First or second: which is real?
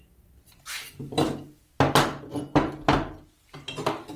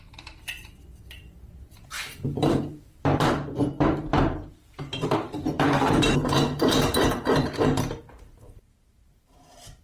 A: first